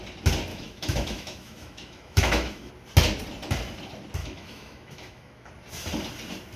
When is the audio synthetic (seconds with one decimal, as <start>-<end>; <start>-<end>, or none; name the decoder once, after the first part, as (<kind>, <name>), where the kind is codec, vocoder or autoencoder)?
0.5-2.7 (autoencoder, DAC-VAE); 4.2-5.5